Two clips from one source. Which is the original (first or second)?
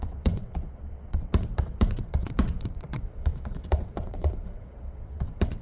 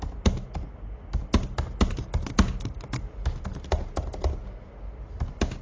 second